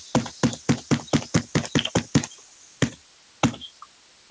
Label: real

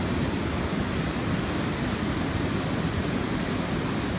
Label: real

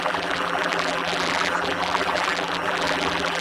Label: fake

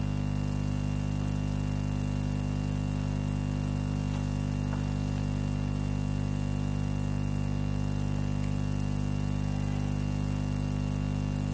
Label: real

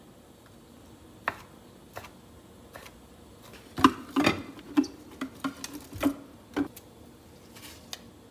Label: real